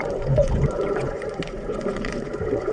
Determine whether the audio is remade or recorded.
remade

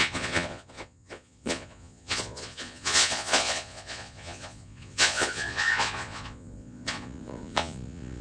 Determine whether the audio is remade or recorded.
remade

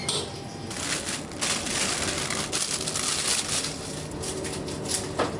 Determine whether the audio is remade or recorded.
recorded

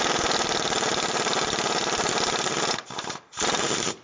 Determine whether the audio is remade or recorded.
recorded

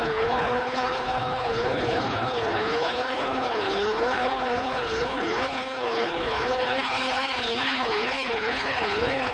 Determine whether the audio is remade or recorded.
remade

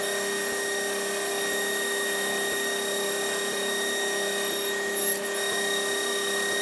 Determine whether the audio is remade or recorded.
recorded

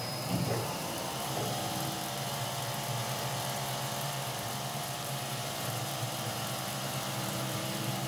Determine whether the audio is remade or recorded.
remade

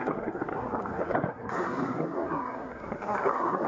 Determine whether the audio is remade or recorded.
remade